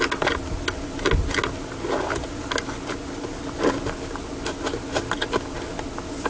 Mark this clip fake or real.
real